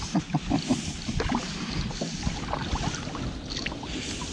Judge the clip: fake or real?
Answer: real